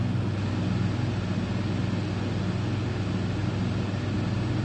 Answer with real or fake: real